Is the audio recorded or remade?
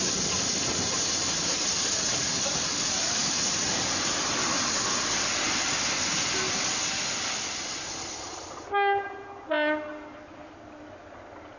recorded